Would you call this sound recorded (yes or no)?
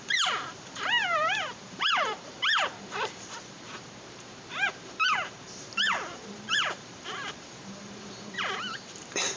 no